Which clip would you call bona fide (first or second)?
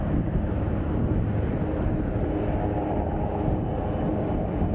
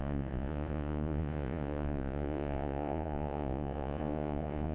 first